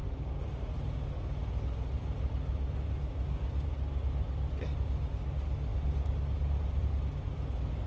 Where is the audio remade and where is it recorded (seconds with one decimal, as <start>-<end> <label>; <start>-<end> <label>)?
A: 0.0-0.5 remade; 0.5-3.1 recorded; 3.1-3.7 remade; 3.7-7.9 recorded